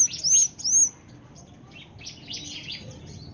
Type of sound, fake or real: real